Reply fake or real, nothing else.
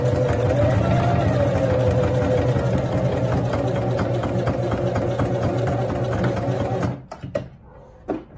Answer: real